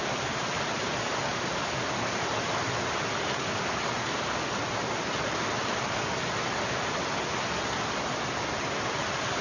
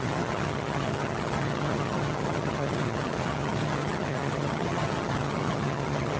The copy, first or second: second